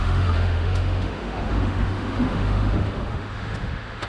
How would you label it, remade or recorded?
remade